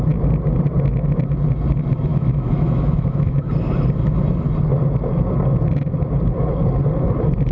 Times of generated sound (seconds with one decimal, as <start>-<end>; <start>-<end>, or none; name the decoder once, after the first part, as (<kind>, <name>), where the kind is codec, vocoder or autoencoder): 2.1-3.5 (autoencoder, DAC-VAE)